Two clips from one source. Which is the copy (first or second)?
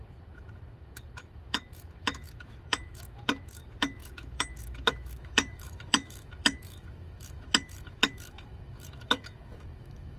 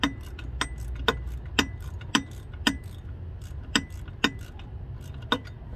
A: first